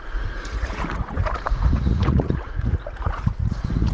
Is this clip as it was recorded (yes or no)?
no